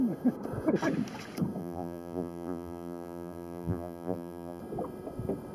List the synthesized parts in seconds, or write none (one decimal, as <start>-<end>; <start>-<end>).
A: 1.6-4.6